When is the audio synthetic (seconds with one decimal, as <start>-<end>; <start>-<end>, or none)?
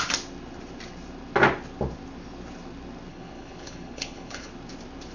3.1-4.5